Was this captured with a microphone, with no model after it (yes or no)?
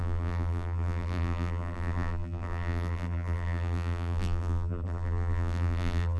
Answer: no